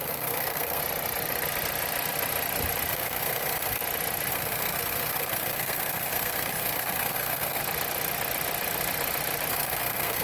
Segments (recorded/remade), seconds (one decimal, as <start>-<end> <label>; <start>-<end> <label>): 0.0-0.8 remade; 0.8-2.9 recorded; 2.9-3.8 remade; 3.8-4.3 recorded; 4.3-7.6 remade; 7.6-9.5 recorded; 9.5-10.2 remade